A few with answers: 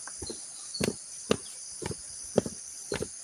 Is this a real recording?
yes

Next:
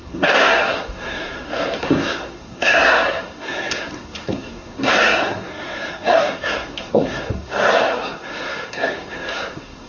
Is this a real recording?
no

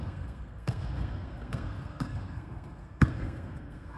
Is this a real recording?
no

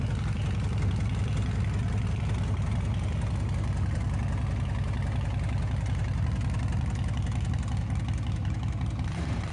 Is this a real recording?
yes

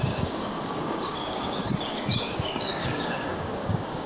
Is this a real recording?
no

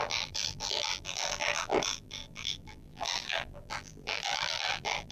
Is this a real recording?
no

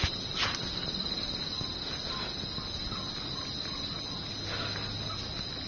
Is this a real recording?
yes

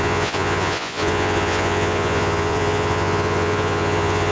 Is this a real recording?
no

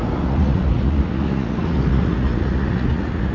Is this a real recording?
no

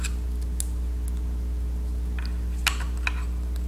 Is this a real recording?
yes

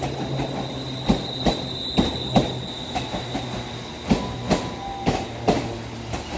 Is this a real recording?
yes